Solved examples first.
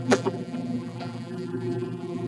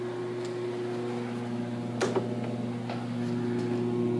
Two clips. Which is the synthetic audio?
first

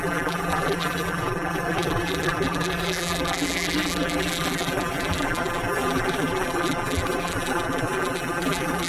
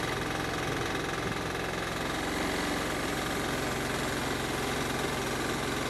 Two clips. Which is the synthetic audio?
first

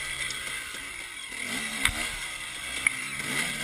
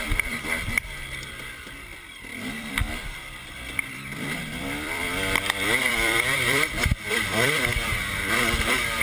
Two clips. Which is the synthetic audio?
second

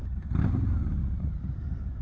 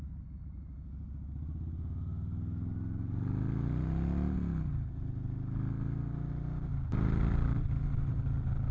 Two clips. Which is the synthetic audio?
first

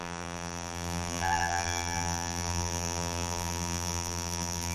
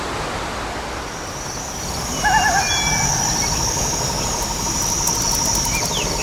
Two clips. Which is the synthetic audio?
first